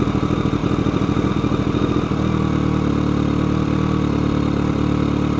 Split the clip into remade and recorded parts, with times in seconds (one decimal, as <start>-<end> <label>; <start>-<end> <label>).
0.0-0.6 recorded; 0.6-1.3 remade; 1.3-5.4 recorded